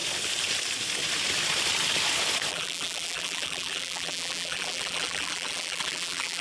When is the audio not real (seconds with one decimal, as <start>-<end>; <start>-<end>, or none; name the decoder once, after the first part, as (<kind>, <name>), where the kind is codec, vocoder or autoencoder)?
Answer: 2.5-6.4 (vocoder, BigVGAN v2)